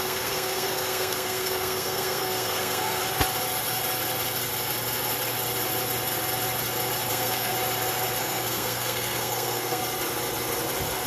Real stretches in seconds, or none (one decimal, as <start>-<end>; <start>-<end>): 3.0-7.1; 7.5-8.2; 9.8-11.1